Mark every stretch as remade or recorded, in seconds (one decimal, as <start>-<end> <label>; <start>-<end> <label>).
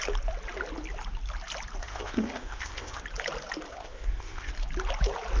0.0-1.8 recorded; 1.8-3.0 remade; 3.0-3.7 recorded; 3.7-4.5 remade; 4.5-5.4 recorded